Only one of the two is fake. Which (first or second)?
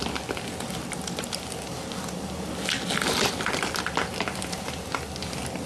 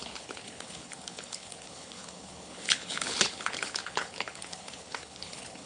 second